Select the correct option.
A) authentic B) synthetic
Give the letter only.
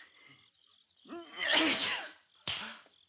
A